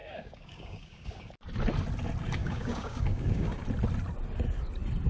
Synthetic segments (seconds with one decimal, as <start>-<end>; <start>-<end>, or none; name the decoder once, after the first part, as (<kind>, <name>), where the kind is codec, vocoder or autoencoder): 0.0-1.3 (codec, DAC); 2.4-3.6